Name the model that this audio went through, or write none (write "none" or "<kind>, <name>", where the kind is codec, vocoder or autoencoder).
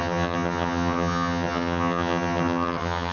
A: vocoder, HiFi-GAN